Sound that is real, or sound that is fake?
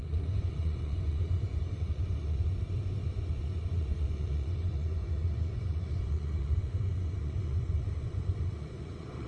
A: fake